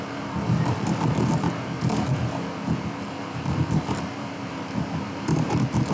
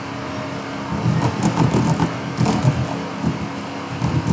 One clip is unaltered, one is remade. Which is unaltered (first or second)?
second